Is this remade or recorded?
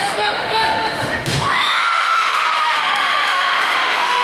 remade